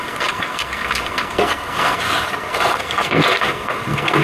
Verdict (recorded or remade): remade